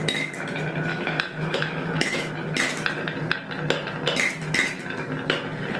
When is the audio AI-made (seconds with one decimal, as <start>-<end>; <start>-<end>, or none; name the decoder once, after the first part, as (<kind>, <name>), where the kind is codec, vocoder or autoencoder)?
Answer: 0.9-2.3 (autoencoder, DAC-VAE)